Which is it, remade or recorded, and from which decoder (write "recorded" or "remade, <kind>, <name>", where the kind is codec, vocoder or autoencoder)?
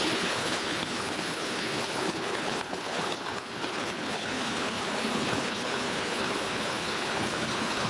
remade, codec, HILCodec